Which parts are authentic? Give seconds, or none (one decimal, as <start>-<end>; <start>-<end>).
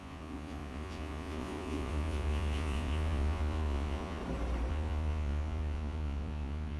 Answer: 4.2-4.7